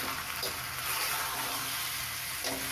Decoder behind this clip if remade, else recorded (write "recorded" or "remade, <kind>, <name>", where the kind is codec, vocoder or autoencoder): recorded